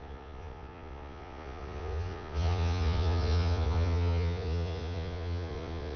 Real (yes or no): no